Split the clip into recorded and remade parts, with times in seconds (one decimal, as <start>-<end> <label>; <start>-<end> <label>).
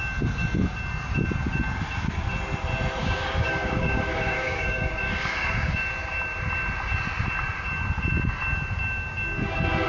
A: 0.0-3.0 recorded; 3.0-5.8 remade; 5.8-9.9 recorded